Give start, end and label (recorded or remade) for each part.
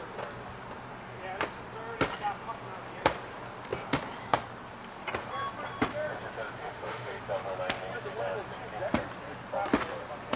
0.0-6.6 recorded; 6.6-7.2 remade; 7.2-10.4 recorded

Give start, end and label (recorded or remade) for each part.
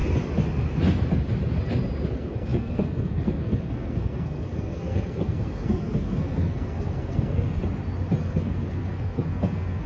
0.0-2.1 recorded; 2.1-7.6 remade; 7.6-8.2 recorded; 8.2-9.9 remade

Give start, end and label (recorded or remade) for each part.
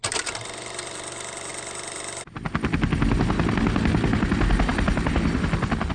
0.0-5.9 recorded